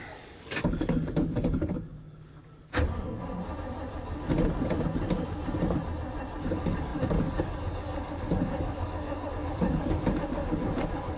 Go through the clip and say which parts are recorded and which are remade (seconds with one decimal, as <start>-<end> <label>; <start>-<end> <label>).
0.0-2.4 remade; 2.4-6.4 recorded; 6.4-11.2 remade